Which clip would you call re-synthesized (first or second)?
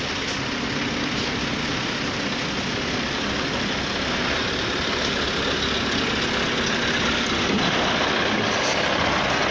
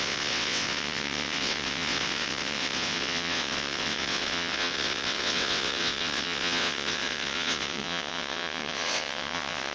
second